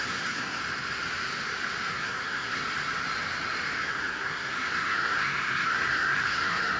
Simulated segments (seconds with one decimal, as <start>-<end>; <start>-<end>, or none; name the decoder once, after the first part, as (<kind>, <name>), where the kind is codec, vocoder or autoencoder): 0.0-0.6 (codec, SNAC); 1.9-2.6; 3.8-6.8